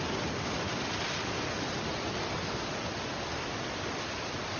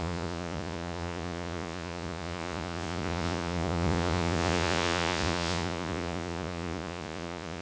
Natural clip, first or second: first